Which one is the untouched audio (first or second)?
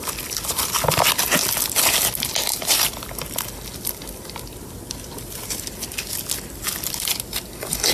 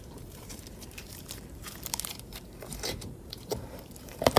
first